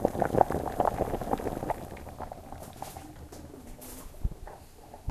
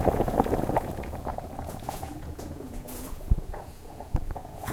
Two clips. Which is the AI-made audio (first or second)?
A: second